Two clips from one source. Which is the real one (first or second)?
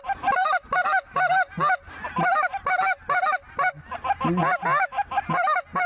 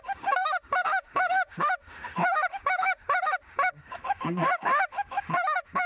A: first